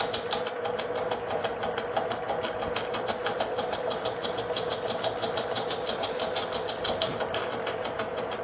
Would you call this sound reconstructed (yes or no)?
no